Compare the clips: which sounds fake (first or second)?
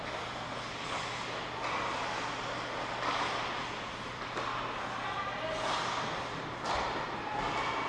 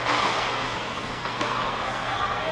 second